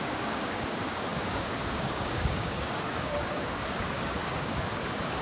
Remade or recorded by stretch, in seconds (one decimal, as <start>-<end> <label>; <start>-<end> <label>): 0.0-5.2 remade